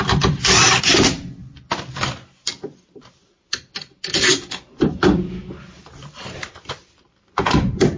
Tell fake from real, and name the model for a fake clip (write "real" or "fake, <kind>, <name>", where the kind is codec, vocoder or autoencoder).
fake, vocoder, BigVGAN v2